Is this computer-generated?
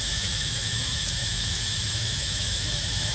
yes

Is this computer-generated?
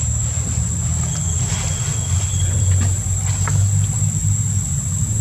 yes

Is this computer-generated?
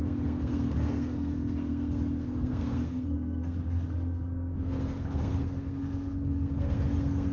yes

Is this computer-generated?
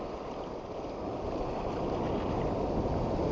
no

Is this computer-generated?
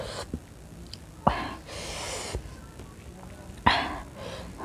no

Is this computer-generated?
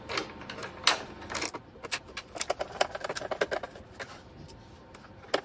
no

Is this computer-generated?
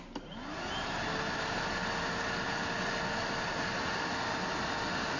no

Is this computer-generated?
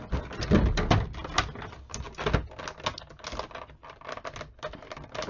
no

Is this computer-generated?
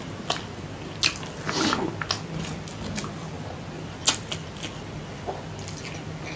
no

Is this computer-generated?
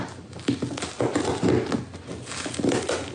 no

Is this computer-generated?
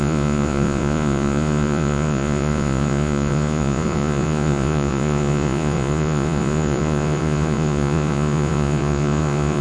yes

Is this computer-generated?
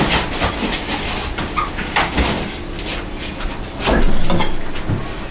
no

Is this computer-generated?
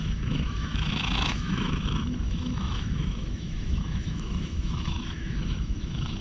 yes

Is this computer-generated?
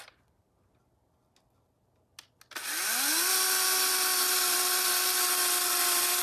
no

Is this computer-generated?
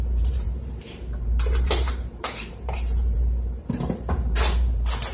yes